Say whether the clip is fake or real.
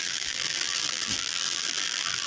fake